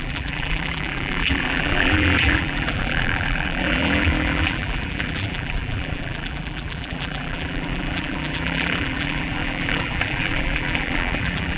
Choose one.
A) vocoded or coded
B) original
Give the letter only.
A